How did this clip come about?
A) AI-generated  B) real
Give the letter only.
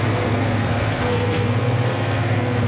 A